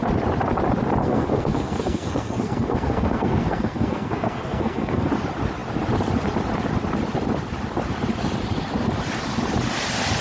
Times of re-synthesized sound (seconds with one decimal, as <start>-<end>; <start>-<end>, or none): 1.0-5.1